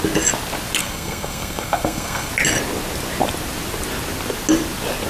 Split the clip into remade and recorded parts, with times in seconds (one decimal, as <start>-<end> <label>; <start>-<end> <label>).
0.0-0.8 recorded; 0.8-2.3 remade; 2.3-5.1 recorded

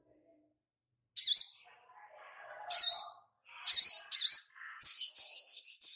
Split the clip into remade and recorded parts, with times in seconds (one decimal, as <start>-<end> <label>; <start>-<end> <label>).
0.0-0.9 remade; 0.9-4.5 recorded; 4.5-6.0 remade